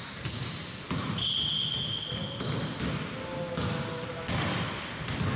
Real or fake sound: real